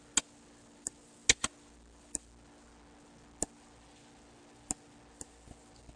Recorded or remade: recorded